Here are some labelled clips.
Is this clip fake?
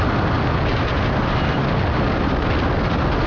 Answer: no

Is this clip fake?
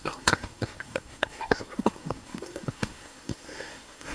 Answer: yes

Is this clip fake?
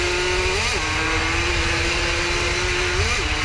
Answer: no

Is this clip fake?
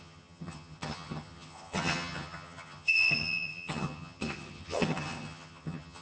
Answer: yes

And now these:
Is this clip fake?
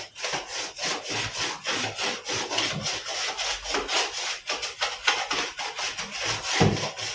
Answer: no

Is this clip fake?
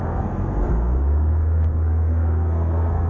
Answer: yes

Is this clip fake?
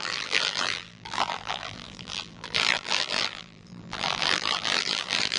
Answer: yes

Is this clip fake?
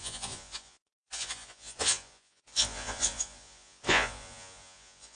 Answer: yes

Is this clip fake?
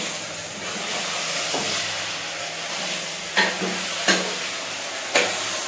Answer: no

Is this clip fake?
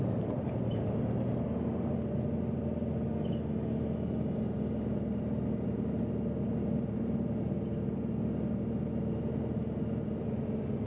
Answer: no